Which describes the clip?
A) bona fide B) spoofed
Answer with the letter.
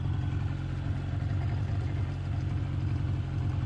A